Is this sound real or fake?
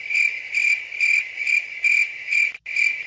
real